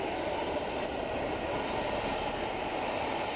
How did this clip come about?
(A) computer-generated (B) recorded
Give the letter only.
B